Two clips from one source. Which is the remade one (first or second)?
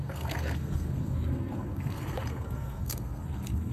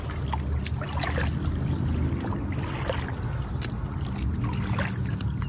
first